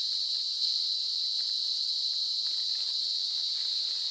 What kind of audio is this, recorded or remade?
remade